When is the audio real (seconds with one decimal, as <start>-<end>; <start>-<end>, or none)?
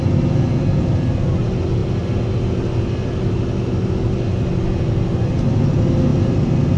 0.0-6.8